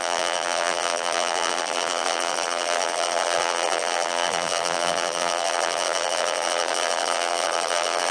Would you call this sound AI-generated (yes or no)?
yes